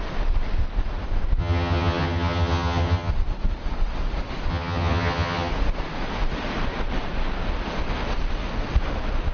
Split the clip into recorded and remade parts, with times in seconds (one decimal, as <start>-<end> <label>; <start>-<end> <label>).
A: 0.0-1.4 recorded; 1.4-3.1 remade; 3.1-4.5 recorded; 4.5-5.5 remade; 5.5-9.3 recorded